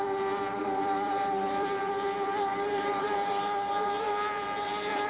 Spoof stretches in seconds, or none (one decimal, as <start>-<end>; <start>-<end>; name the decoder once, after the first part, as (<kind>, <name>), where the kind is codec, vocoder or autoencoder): 0.6-3.7 (vocoder, BigVGAN v2)